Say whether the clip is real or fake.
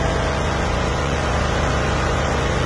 fake